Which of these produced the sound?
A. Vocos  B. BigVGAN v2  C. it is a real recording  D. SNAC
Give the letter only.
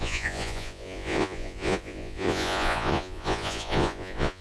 A